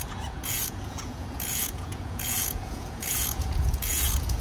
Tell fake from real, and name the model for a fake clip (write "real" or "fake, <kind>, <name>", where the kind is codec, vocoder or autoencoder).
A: fake, vocoder, Vocos